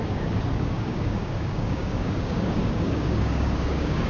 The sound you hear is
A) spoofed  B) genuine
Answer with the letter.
A